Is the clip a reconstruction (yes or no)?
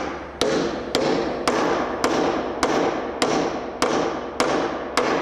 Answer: no